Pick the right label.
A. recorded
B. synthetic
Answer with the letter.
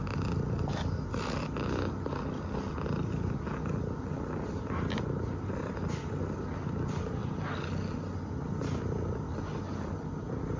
A